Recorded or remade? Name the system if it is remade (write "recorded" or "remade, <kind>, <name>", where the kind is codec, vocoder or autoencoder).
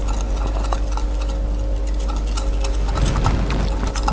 recorded